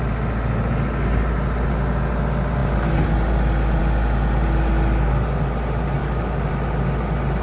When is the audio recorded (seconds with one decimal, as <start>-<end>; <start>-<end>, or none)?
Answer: 0.0-6.0; 6.5-7.4